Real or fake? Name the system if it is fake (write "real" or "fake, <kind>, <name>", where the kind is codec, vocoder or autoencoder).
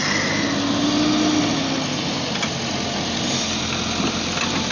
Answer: real